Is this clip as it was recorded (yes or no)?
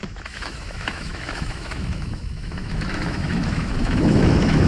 no